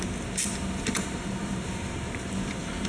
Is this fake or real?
fake